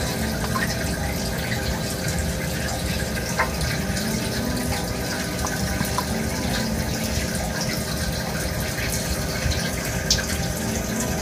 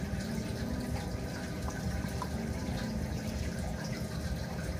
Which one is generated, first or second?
second